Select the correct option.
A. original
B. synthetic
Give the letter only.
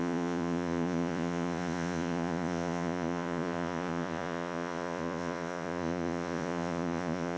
B